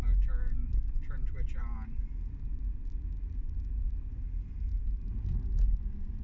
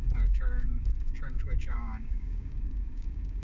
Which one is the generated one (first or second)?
second